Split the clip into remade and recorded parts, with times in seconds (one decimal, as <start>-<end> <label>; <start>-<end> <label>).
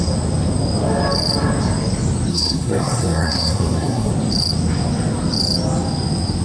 0.0-2.3 recorded; 2.3-4.1 remade; 4.1-6.4 recorded